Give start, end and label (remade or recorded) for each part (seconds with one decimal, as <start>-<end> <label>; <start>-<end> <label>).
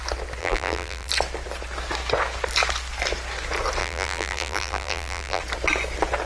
0.0-0.4 recorded; 0.4-1.1 remade; 1.1-3.8 recorded; 3.8-5.4 remade; 5.4-6.3 recorded